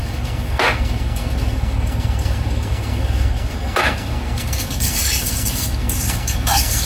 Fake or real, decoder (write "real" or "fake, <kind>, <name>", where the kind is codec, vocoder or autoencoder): fake, codec, SNAC